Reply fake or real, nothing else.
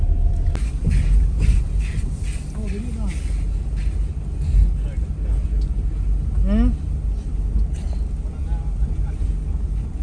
real